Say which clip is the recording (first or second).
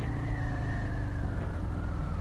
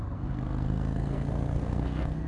first